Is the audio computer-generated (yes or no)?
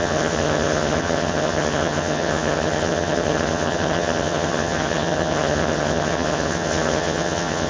yes